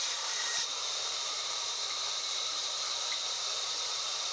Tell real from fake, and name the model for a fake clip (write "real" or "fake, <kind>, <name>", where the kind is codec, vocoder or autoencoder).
fake, vocoder, BigVGAN v2